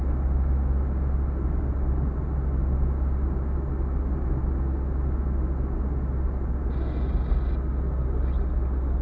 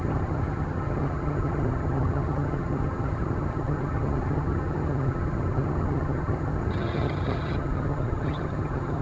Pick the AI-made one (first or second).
second